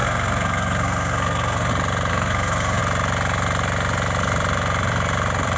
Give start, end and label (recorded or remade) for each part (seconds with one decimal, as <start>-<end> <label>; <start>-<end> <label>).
0.0-1.7 remade; 1.7-2.1 recorded; 2.1-2.8 remade; 2.8-5.6 recorded